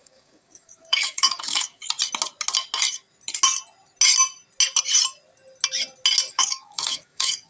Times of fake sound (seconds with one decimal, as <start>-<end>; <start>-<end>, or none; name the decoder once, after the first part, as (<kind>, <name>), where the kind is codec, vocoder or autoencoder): 0.0-1.8 (codec, DAC); 6.3-7.5